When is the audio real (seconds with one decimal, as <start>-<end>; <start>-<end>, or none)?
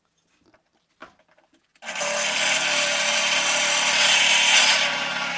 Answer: 0.0-1.0; 4.2-5.4